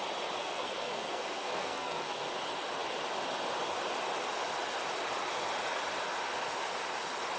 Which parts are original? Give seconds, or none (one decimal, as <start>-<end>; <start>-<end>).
0.0-0.4; 2.3-7.4

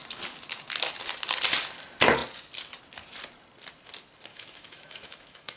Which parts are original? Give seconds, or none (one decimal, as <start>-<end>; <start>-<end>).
0.0-4.3

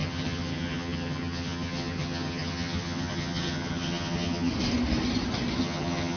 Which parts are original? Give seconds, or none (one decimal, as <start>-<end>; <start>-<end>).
4.5-5.6

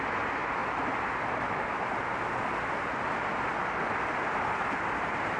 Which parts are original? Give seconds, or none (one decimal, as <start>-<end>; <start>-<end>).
0.0-5.4

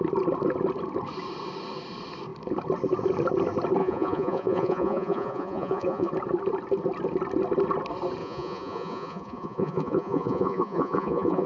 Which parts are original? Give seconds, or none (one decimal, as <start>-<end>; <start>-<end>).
0.0-3.8; 6.1-8.2

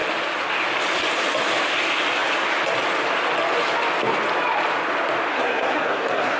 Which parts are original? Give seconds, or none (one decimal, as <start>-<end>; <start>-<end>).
0.0-5.3

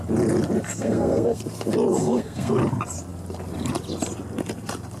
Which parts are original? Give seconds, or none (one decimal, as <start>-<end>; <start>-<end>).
0.0-0.7; 1.4-2.0; 2.6-5.0